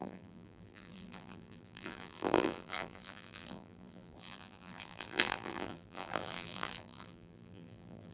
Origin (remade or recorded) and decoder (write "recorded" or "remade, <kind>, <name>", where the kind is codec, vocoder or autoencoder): remade, vocoder, BigVGAN v2